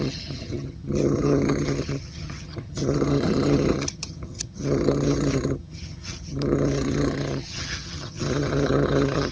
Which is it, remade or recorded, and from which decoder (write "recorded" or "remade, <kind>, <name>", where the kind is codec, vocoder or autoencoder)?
remade, vocoder, HiFi-GAN